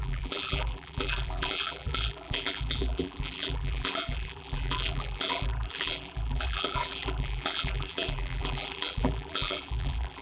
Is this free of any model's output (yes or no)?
no